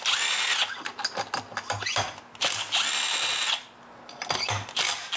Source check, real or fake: real